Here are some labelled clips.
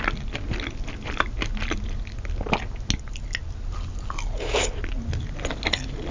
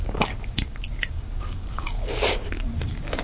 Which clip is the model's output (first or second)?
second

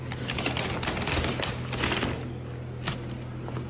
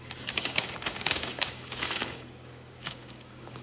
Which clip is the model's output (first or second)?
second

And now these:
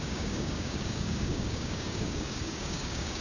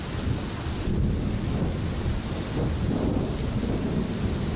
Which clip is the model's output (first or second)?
first